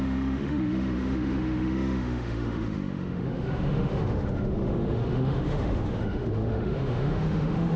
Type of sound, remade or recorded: remade